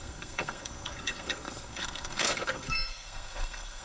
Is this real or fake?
fake